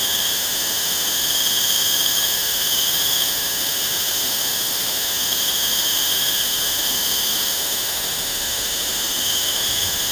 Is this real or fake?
fake